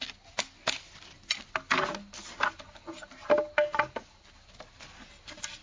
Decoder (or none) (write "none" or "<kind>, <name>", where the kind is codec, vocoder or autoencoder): none